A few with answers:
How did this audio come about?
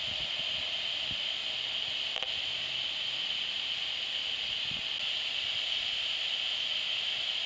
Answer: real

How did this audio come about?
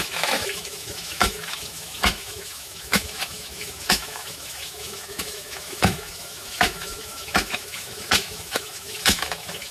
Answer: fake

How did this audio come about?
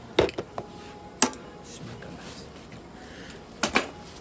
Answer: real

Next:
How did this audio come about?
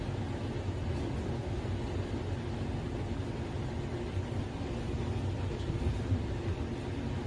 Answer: real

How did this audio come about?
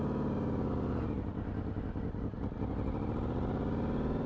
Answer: real